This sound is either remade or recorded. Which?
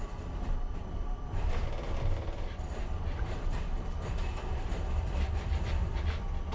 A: remade